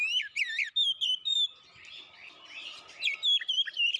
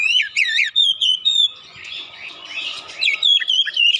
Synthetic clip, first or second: second